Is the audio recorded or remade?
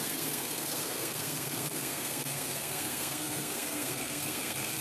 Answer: remade